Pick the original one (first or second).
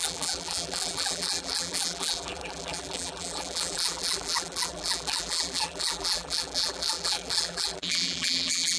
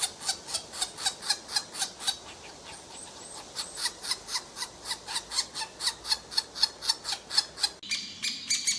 second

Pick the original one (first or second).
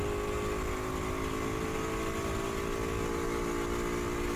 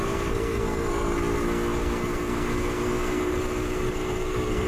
first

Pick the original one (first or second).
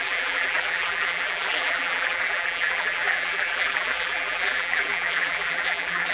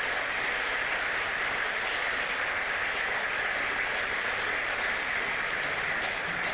second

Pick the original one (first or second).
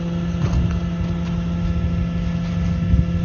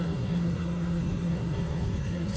first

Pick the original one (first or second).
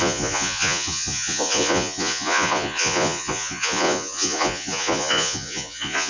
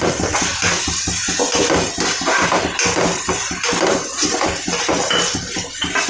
second